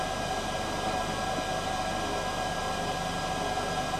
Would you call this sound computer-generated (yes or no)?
no